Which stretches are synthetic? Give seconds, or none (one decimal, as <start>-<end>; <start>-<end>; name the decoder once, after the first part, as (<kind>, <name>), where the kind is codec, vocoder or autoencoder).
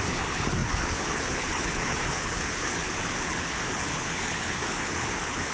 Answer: 0.0-5.5 (codec, HILCodec)